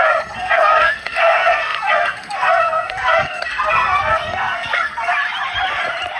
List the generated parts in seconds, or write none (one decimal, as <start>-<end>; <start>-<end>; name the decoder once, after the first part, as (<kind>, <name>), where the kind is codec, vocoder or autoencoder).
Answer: 0.0-5.1 (codec, SNAC)